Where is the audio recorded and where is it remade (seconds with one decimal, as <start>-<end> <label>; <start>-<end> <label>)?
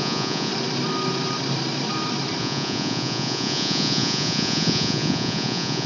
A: 0.0-0.5 remade; 0.5-2.4 recorded; 2.4-5.9 remade